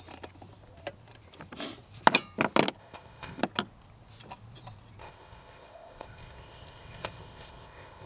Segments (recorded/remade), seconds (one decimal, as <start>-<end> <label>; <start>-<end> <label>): 0.0-2.8 recorded; 2.8-3.4 remade; 3.4-5.0 recorded; 5.0-8.1 remade